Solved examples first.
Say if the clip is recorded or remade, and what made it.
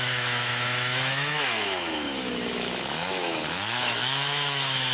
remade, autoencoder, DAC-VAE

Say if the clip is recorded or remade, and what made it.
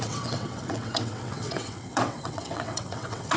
remade, vocoder, WaveNeXt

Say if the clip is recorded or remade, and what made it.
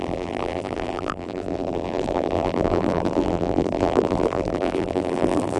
remade, vocoder, BigVGAN v2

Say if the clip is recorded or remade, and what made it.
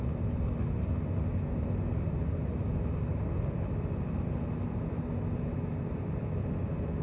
recorded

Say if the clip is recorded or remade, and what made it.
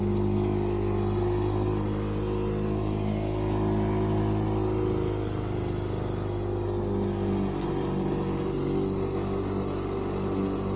recorded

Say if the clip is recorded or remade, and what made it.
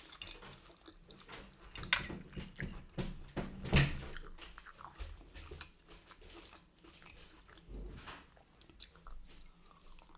recorded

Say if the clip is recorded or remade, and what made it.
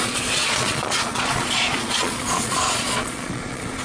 remade, vocoder, Vocos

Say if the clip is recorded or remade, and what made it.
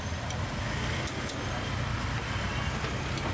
recorded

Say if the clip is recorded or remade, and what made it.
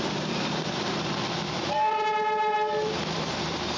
remade, vocoder, BigVGAN v2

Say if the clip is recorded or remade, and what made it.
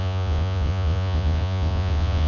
remade, vocoder, Vocos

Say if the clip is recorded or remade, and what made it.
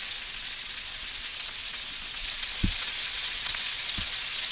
remade, vocoder, WaveNeXt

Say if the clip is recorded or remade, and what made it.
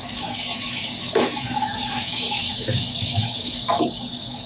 remade, codec, DAC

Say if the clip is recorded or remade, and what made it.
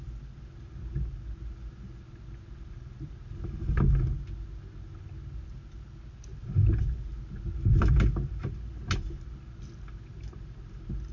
recorded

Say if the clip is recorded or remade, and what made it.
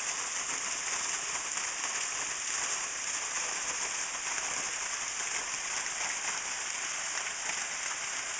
recorded